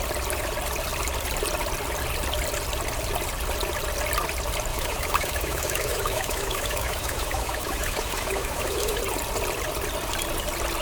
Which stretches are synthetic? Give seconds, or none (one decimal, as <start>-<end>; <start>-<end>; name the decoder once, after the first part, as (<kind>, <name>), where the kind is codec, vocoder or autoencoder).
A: 4.7-9.0 (autoencoder, DAC-VAE)